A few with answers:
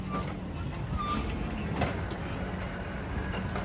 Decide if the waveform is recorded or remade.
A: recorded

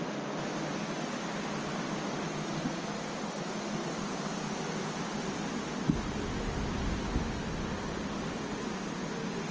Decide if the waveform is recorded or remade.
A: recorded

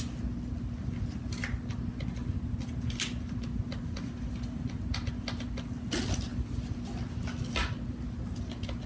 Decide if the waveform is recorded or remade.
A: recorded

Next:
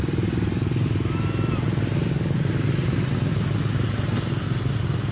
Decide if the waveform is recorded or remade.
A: recorded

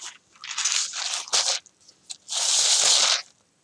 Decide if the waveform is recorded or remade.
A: recorded